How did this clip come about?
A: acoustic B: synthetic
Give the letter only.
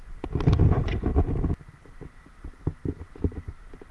A